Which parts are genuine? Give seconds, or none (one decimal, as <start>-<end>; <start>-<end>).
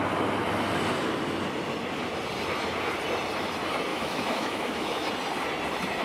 0.0-3.9; 5.1-6.0